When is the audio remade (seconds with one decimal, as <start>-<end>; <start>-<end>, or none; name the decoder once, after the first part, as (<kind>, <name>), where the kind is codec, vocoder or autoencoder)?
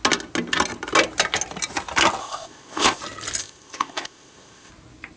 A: 2.2-3.0 (codec, ZipCodec); 3.4-4.7